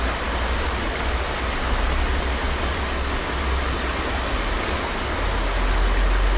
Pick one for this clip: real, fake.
real